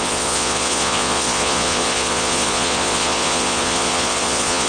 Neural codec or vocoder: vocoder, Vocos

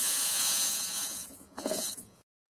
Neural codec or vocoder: vocoder, Vocos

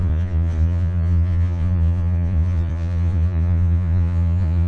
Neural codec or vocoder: vocoder, Vocos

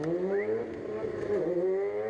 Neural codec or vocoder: none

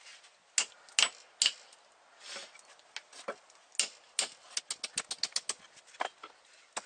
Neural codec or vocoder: none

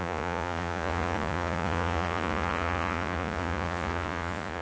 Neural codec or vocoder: vocoder, Vocos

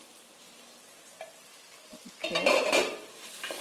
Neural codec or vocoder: none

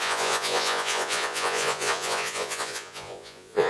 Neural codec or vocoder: vocoder, Vocos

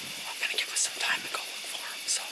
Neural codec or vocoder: none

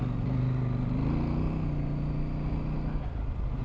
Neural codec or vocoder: none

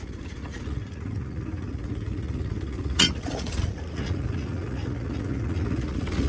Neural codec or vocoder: vocoder, Vocos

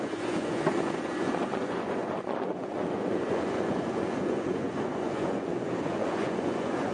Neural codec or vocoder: vocoder, Vocos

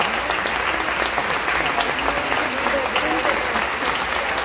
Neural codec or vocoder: none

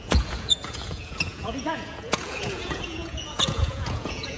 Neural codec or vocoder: vocoder, Vocos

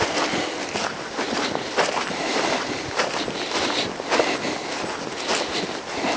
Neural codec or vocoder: none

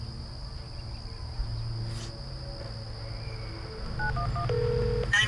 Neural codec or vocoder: none